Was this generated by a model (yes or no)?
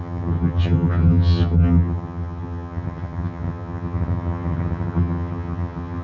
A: yes